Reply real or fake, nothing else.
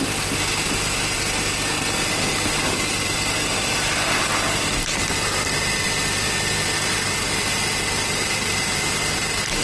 real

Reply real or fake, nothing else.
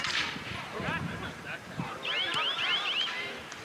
fake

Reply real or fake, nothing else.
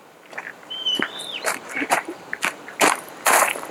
fake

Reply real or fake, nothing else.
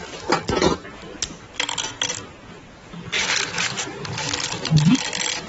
real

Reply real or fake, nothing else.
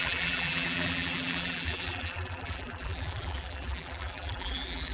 fake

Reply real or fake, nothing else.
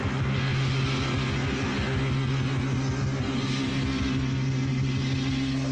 real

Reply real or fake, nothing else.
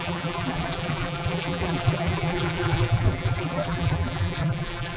fake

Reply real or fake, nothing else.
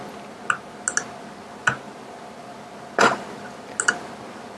real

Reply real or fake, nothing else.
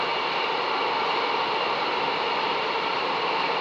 fake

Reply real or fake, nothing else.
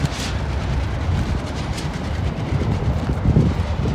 fake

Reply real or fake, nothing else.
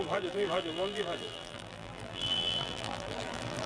fake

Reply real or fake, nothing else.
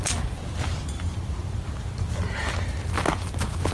real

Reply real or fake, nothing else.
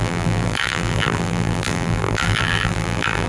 fake